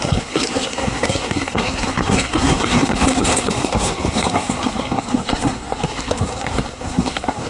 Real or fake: fake